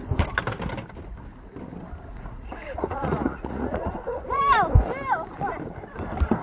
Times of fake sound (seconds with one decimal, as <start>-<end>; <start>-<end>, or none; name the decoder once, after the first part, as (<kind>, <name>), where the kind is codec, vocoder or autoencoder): 2.1-4.4 (vocoder, Vocos)

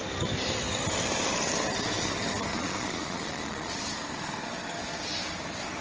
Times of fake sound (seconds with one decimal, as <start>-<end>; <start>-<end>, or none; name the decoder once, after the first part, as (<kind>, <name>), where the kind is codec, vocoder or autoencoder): 2.5-3.8 (vocoder, Vocos)